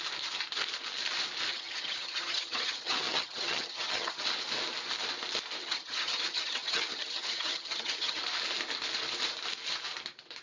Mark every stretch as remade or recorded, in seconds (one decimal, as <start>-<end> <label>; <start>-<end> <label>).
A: 0.0-1.5 recorded; 1.5-4.2 remade; 4.2-5.6 recorded; 5.6-8.2 remade; 8.2-10.4 recorded

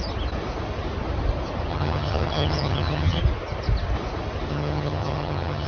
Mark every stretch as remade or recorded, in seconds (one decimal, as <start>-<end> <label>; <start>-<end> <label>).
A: 0.0-1.7 recorded; 1.7-3.2 remade; 3.2-4.5 recorded; 4.5-5.7 remade

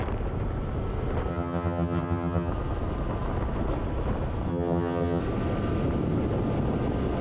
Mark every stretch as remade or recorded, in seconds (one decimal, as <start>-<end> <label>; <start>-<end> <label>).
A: 0.0-1.3 recorded; 1.3-2.5 remade; 2.5-4.5 recorded; 4.5-5.2 remade; 5.2-7.2 recorded

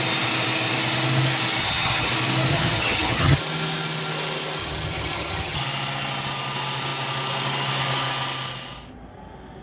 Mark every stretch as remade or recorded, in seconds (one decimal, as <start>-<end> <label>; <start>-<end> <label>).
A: 0.0-1.6 recorded; 1.6-2.1 remade; 2.1-2.5 recorded; 2.5-3.4 remade; 3.4-4.6 recorded; 4.6-5.6 remade; 5.6-9.6 recorded

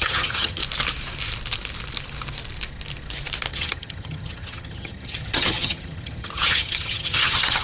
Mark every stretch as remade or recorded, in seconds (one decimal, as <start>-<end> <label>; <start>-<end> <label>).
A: 0.0-0.6 remade; 0.6-3.5 recorded; 3.5-7.6 remade

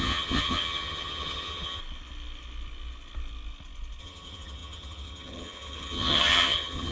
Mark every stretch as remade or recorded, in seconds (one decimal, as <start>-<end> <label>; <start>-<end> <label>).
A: 0.0-1.8 remade; 1.8-4.0 recorded; 4.0-6.9 remade